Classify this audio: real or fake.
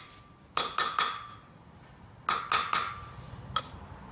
real